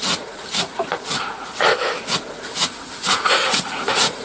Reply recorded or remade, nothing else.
remade